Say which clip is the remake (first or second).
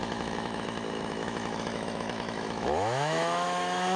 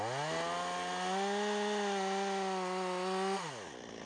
first